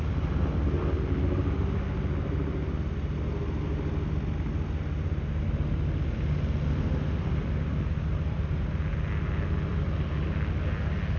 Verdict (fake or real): real